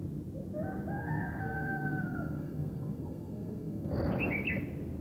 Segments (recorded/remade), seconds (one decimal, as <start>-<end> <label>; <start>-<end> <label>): 0.0-0.9 recorded; 0.9-3.9 remade; 3.9-5.0 recorded